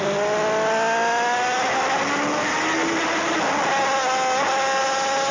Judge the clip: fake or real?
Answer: real